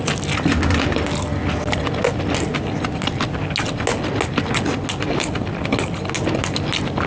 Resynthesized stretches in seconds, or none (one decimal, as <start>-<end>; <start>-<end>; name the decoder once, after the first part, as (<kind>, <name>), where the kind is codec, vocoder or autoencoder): none

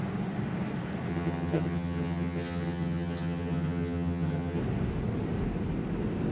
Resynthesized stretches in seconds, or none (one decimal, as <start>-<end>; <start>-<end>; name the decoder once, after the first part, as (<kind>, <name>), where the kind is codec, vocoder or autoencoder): 1.1-4.6 (vocoder, HiFi-GAN)